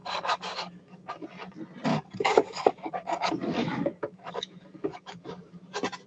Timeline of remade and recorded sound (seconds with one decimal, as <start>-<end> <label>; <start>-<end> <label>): 0.0-1.1 remade; 1.1-1.9 recorded; 1.9-5.6 remade; 5.6-6.1 recorded

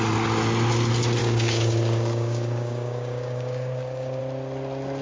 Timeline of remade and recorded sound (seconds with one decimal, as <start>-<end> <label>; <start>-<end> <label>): 0.0-1.2 recorded; 1.2-4.2 remade; 4.2-5.0 recorded

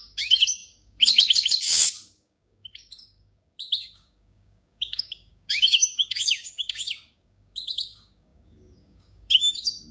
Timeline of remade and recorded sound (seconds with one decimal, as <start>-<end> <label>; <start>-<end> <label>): 0.0-9.9 remade